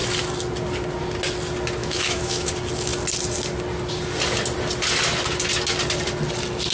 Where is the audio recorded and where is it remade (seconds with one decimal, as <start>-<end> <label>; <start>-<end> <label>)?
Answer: 0.0-1.8 recorded; 1.8-2.5 remade; 2.5-6.7 recorded